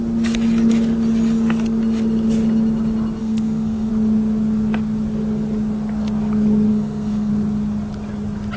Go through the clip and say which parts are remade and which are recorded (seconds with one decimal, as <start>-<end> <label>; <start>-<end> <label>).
0.0-3.2 recorded; 3.2-3.9 remade; 3.9-6.7 recorded; 6.7-7.3 remade; 7.3-8.6 recorded